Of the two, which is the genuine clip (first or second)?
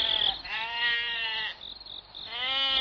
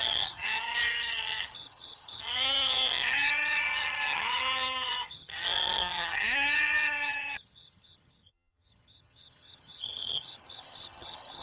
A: first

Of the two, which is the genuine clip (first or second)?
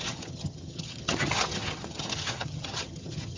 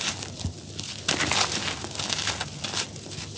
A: second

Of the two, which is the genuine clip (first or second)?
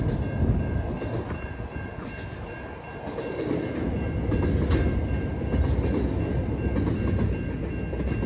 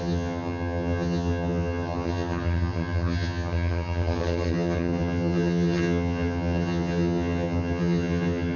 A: first